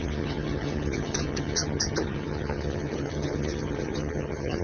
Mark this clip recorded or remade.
remade